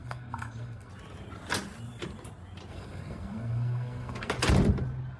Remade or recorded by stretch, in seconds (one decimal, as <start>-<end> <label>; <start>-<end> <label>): 0.0-0.9 remade; 0.9-2.7 recorded; 2.7-4.3 remade; 4.3-5.2 recorded